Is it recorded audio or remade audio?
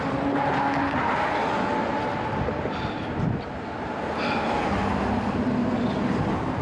recorded